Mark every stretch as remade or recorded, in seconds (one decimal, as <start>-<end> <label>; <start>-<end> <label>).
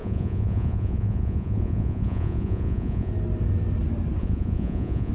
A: 0.0-3.1 remade; 3.1-4.2 recorded; 4.2-5.1 remade